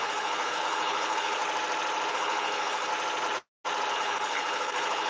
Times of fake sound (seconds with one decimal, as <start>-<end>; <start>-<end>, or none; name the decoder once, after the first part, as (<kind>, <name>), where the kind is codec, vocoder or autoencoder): 0.0-1.4 (codec, HILCodec); 2.1-2.9; 3.9-5.1